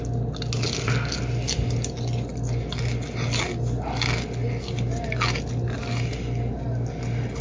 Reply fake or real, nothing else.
real